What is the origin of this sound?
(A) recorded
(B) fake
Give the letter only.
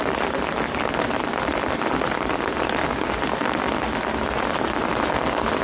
A